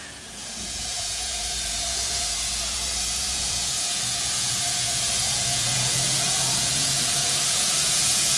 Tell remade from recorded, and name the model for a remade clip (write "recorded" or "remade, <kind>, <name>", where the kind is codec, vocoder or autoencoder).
remade, vocoder, Vocos